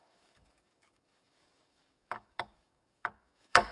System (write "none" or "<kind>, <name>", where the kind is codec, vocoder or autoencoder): codec, DAC